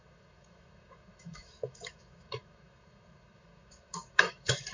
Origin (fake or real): fake